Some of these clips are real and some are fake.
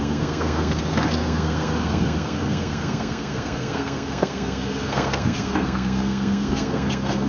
fake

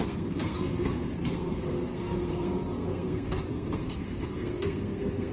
fake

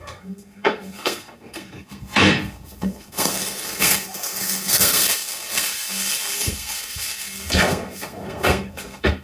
fake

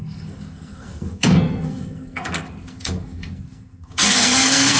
fake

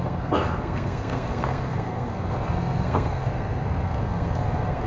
fake